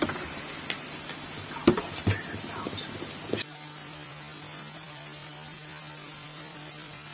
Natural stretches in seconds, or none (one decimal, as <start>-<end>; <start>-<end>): none